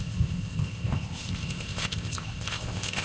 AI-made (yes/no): yes